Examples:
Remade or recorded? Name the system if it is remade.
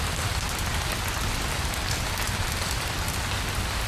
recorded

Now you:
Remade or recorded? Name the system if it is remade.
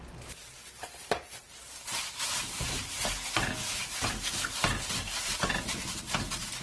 remade, vocoder, BigVGAN v2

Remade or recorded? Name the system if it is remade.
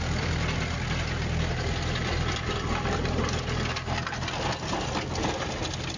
recorded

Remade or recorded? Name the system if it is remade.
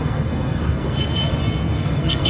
remade, codec, SNAC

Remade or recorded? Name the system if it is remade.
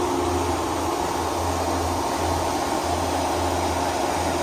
recorded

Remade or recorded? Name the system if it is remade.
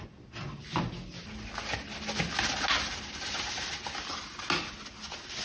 recorded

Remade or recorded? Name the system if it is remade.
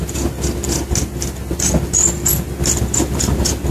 recorded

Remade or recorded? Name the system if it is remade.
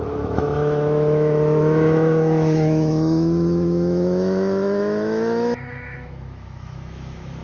remade, autoencoder, DAC-VAE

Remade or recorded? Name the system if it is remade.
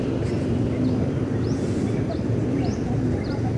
recorded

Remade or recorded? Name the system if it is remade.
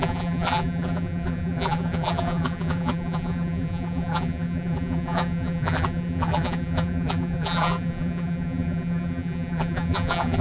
remade, vocoder, BigVGAN v2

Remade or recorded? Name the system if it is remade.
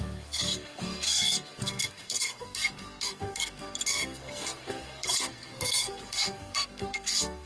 remade, codec, SNAC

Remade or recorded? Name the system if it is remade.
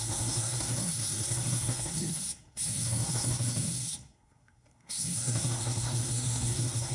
remade, codec, SNAC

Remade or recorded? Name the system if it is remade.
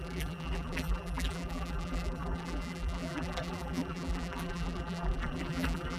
remade, vocoder, BigVGAN v2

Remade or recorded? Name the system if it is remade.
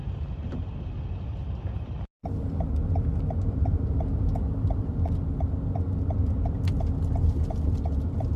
recorded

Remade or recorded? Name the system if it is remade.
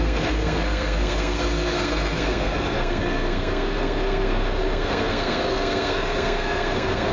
remade, codec, SNAC